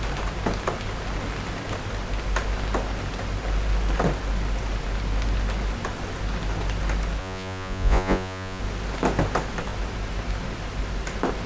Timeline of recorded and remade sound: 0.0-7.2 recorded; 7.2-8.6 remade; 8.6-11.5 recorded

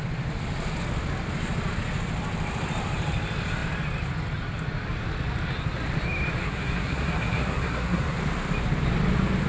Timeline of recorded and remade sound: 0.0-6.4 recorded; 6.4-8.2 remade; 8.2-9.5 recorded

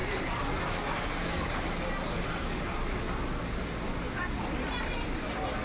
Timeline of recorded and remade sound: 0.0-5.6 recorded

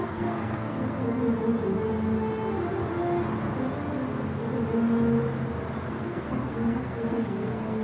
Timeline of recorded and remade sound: 0.0-1.2 remade; 1.2-5.9 recorded; 5.9-7.8 remade

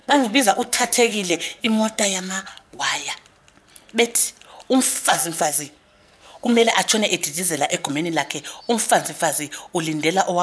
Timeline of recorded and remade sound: 0.0-2.8 remade; 2.8-4.9 recorded; 4.9-6.7 remade; 6.7-7.3 recorded; 7.3-7.9 remade; 7.9-10.4 recorded

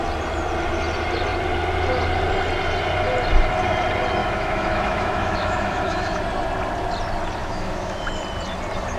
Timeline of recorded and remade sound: 0.0-4.2 recorded; 4.2-6.2 remade; 6.2-7.4 recorded; 7.4-8.2 remade; 8.2-9.0 recorded

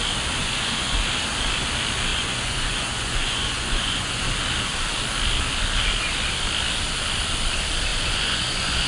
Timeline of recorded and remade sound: 0.0-0.4 recorded; 0.4-1.0 remade; 1.0-2.1 recorded; 2.1-4.2 remade; 4.2-7.9 recorded; 7.9-8.9 remade

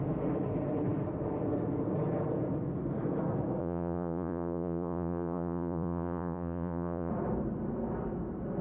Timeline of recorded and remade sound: 0.0-3.6 recorded; 3.6-7.1 remade; 7.1-8.6 recorded